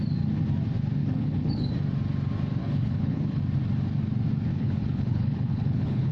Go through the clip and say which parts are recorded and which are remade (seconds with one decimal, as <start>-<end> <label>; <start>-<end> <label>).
0.0-1.0 recorded; 1.0-1.7 remade; 1.7-2.6 recorded; 2.6-3.4 remade; 3.4-4.5 recorded; 4.5-6.1 remade